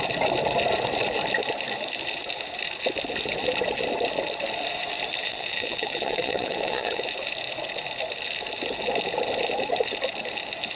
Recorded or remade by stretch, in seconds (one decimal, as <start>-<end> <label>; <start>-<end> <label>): 0.0-5.2 recorded; 5.2-7.0 remade; 7.0-10.8 recorded